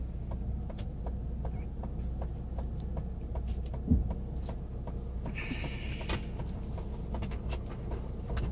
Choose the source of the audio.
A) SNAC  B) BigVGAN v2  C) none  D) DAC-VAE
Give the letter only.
C